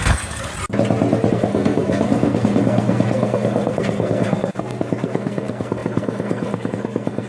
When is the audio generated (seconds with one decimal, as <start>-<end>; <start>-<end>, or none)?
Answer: 0.0-0.5; 1.3-7.3